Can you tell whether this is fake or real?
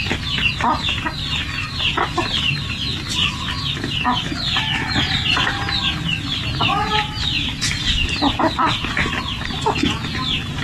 real